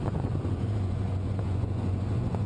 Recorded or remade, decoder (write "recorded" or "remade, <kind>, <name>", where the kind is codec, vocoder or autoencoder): remade, vocoder, Vocos